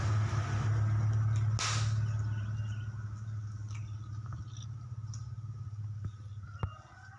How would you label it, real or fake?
real